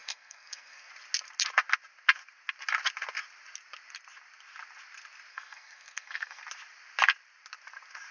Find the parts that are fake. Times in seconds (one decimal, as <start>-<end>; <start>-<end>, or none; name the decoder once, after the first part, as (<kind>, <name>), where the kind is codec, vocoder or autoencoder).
0.0-0.9 (codec, SNAC); 5.3-6.4